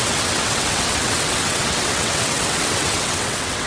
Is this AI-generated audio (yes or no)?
yes